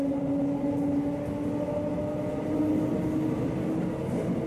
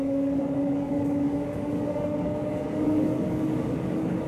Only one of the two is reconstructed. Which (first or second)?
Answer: second